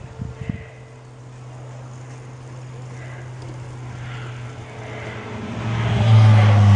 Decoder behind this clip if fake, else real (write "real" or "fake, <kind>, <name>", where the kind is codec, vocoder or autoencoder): real